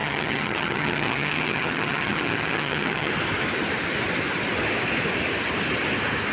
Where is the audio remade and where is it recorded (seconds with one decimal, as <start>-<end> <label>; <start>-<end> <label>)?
0.0-3.1 remade; 3.1-6.3 recorded